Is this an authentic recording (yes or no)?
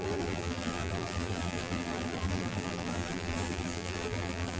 no